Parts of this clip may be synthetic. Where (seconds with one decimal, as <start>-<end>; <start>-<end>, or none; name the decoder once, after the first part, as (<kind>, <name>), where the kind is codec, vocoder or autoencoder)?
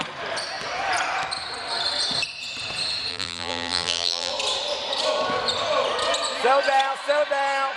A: 3.1-4.3 (vocoder, BigVGAN v2)